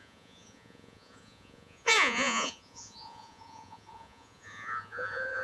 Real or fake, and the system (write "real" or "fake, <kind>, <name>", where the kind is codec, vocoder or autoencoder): fake, vocoder, Vocos